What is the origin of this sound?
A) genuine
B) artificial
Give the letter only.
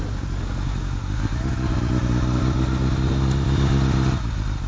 A